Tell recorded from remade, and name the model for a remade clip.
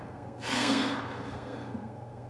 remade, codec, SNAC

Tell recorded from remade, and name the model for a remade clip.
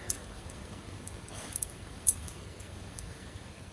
remade, codec, SNAC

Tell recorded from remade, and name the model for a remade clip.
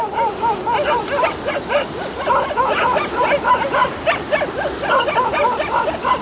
recorded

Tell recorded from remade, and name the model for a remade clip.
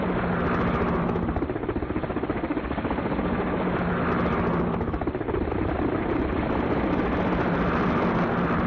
recorded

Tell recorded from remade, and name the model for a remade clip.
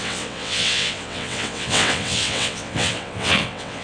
remade, vocoder, WaveNeXt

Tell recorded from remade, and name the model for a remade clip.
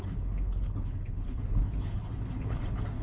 remade, codec, HILCodec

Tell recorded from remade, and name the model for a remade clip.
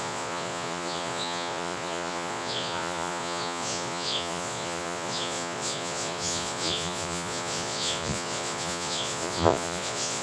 remade, vocoder, Vocos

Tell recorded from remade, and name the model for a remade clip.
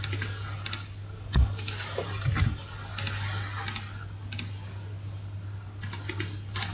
recorded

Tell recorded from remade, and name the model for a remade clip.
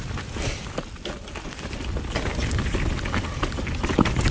recorded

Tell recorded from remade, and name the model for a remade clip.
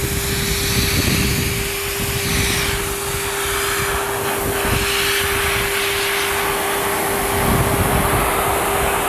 recorded